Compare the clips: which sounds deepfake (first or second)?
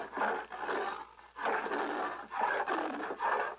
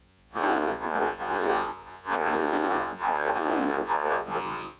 second